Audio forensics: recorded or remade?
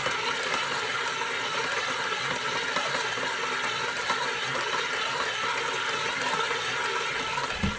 recorded